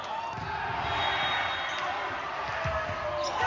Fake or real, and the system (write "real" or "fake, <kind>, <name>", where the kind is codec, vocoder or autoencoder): real